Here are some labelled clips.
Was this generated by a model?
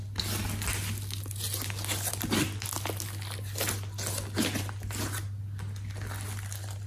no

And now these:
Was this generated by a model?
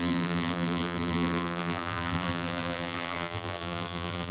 yes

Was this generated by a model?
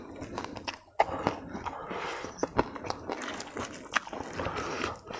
no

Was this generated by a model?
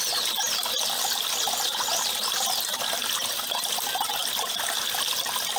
no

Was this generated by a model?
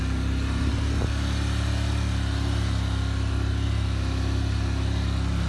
no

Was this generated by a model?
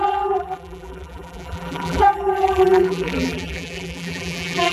yes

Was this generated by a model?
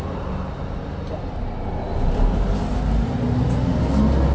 no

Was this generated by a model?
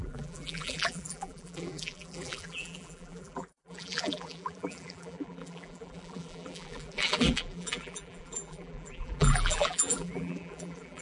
yes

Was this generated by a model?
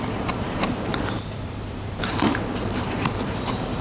yes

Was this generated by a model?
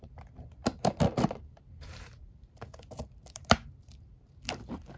yes